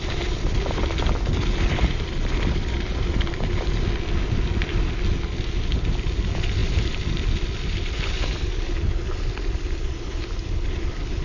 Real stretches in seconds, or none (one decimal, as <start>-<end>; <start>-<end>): 0.0-11.2